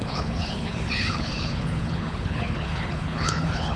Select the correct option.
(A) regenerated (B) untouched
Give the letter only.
A